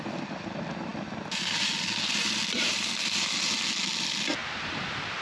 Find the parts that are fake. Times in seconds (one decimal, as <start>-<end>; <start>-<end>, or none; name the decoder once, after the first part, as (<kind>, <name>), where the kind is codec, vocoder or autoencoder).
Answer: 0.0-0.9 (vocoder, BigVGAN v2); 4.0-5.2